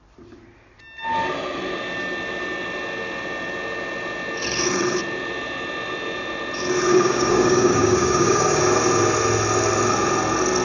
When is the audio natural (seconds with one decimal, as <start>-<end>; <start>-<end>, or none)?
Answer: 0.0-6.9; 8.6-10.6